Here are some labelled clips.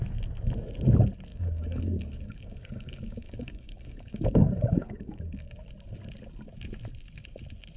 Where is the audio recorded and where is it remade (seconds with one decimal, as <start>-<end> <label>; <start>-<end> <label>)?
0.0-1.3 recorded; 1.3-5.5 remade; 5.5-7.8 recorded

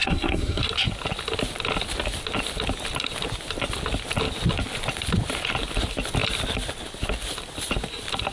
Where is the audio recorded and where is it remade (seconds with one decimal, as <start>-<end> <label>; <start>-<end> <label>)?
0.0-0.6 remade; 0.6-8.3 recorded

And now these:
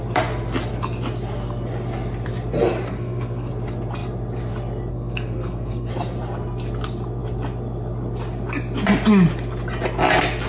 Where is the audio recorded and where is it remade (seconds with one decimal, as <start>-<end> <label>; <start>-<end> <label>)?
0.0-2.9 recorded; 2.9-3.5 remade; 3.5-4.9 recorded; 4.9-5.9 remade; 5.9-10.5 recorded

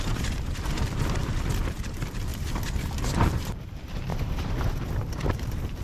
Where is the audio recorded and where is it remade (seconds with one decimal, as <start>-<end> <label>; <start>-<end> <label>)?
0.0-1.2 remade; 1.2-1.9 recorded; 1.9-2.3 remade; 2.3-3.2 recorded; 3.2-5.8 remade